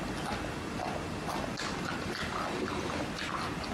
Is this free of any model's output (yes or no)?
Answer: yes